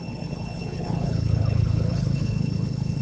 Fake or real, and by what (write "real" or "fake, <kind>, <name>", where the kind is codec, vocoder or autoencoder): fake, codec, HILCodec